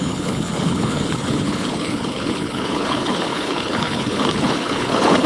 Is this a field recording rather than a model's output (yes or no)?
no